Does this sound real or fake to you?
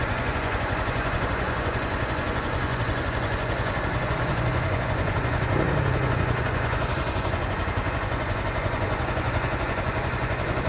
fake